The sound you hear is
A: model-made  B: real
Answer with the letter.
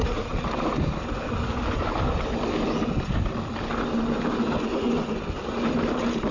B